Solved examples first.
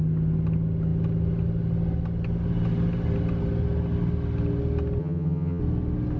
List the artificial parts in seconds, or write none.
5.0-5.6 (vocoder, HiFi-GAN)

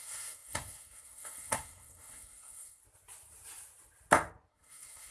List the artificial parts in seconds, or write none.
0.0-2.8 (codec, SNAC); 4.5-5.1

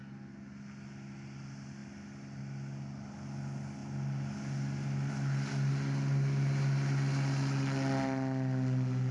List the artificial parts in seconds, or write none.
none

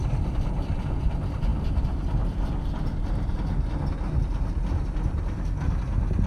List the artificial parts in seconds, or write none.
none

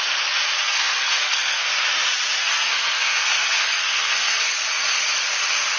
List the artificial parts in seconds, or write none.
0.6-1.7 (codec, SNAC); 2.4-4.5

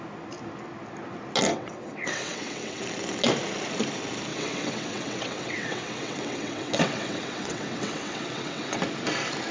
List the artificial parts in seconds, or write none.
1.5-2.8 (vocoder, WaveNeXt); 4.3-8.8